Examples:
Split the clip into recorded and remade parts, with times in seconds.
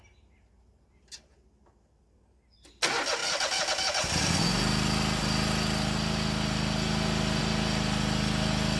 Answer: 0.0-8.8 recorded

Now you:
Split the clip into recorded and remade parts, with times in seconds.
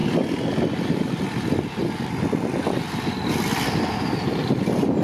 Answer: 0.0-5.0 recorded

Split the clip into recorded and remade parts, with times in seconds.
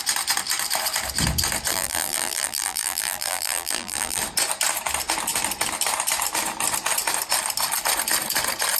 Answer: 0.0-1.7 recorded; 1.7-4.2 remade; 4.2-8.8 recorded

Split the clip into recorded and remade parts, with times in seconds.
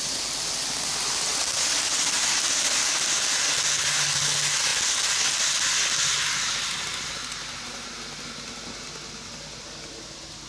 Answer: 0.0-10.5 recorded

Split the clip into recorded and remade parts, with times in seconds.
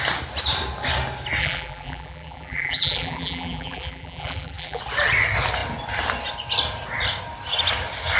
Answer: 0.0-1.4 recorded; 1.4-4.8 remade; 4.8-8.2 recorded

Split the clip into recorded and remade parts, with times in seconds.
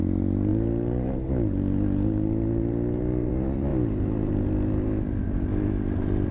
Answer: 0.0-0.5 recorded; 0.5-3.3 remade; 3.3-3.7 recorded; 3.7-4.5 remade; 4.5-6.3 recorded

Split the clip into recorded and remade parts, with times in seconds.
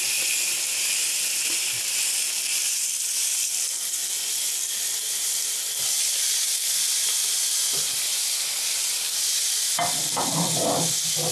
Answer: 0.0-0.7 remade; 0.7-2.6 recorded; 2.6-4.0 remade; 4.0-5.1 recorded; 5.1-11.3 remade